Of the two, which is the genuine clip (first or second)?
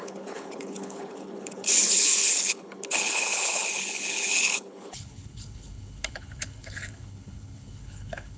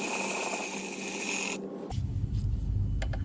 second